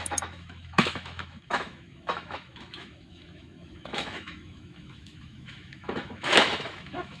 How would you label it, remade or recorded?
remade